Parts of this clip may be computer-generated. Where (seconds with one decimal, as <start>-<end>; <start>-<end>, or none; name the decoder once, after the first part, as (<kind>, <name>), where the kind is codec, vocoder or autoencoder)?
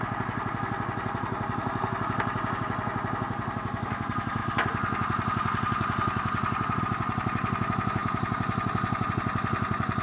none